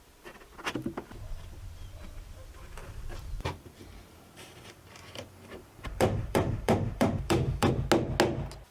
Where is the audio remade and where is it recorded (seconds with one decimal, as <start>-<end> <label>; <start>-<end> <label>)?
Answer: 0.0-2.8 recorded; 2.8-7.7 remade; 7.7-8.7 recorded